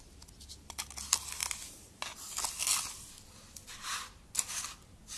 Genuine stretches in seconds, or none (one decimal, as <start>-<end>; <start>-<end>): 0.0-5.2